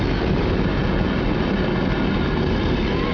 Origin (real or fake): real